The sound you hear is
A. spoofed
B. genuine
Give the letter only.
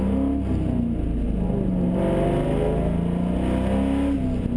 B